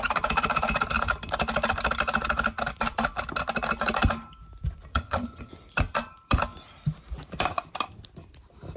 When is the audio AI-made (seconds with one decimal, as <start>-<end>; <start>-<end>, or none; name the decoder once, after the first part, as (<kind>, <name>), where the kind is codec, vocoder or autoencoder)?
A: 4.9-5.5 (vocoder, HiFi-GAN)